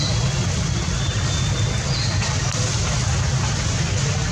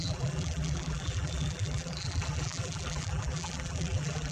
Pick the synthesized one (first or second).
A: second